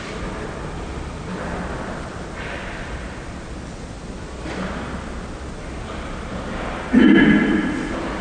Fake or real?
real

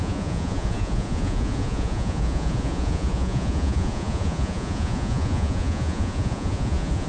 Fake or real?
fake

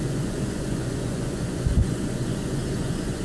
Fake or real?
fake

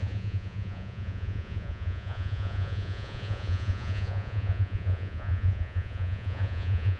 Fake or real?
fake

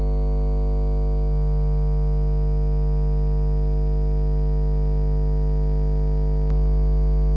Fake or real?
real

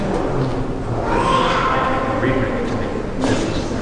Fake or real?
real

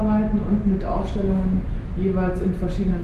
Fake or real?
real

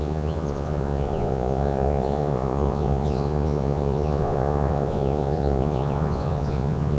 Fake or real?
fake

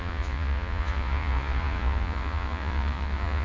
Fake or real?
fake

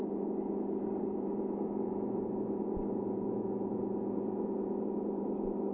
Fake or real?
fake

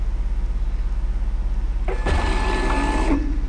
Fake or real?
real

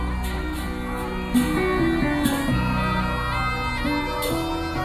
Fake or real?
real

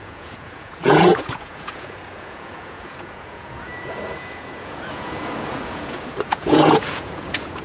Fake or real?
fake